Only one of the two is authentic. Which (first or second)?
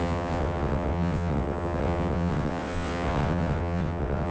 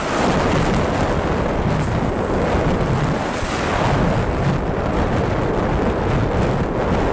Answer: second